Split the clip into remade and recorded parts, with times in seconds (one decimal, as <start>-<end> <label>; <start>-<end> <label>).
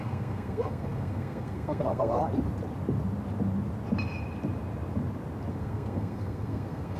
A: 0.0-2.2 remade; 2.2-5.5 recorded; 5.5-7.0 remade